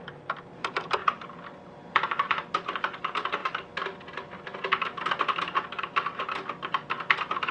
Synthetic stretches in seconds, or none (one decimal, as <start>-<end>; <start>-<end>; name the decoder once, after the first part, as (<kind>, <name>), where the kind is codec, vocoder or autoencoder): 0.0-3.4 (vocoder, BigVGAN v2); 5.8-7.5